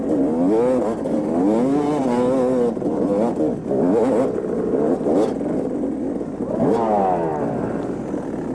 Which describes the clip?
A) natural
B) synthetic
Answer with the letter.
A